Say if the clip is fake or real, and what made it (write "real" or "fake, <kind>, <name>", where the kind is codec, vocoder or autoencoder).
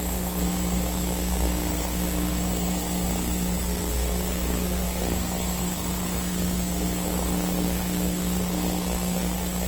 fake, codec, SNAC